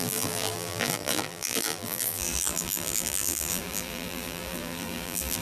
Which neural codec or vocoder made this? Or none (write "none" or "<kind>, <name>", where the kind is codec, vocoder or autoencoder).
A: vocoder, BigVGAN v2